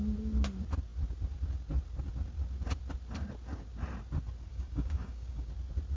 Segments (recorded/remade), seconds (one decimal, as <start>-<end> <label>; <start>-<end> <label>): 0.0-4.5 recorded; 4.5-5.5 remade; 5.5-6.0 recorded

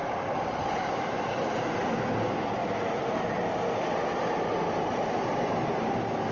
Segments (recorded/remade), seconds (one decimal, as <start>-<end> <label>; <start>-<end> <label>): 0.0-6.3 recorded

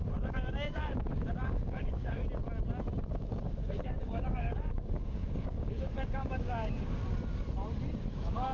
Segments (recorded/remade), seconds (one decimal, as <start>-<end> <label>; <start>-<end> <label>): 0.0-2.2 remade; 2.2-3.1 recorded; 3.1-7.0 remade; 7.0-8.1 recorded; 8.1-8.5 remade